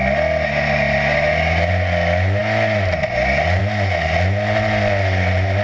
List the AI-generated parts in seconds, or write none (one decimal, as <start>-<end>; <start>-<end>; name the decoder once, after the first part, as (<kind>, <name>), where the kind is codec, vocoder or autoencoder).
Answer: none